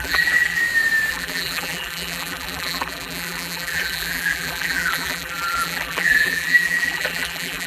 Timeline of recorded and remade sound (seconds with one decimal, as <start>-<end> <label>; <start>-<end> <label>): 0.0-0.6 remade; 0.6-1.1 recorded; 1.1-7.7 remade